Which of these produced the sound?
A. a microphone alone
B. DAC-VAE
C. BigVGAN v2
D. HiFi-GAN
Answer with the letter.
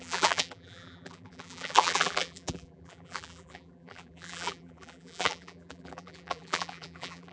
C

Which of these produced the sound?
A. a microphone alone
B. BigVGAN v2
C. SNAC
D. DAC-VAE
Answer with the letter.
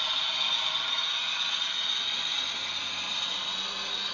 A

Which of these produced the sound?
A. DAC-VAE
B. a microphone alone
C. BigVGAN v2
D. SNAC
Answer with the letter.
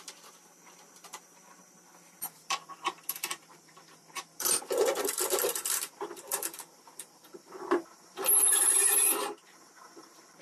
C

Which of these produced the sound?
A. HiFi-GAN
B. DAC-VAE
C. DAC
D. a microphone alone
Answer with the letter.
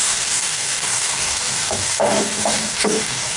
C